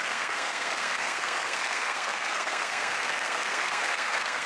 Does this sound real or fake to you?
fake